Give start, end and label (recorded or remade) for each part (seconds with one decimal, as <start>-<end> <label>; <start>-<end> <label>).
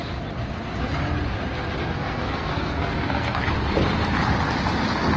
0.0-1.8 recorded; 1.8-3.4 remade; 3.4-5.2 recorded